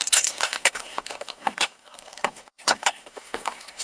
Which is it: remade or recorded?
remade